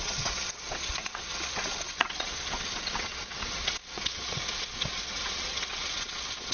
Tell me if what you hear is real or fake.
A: fake